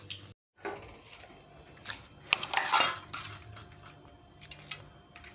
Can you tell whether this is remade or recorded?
recorded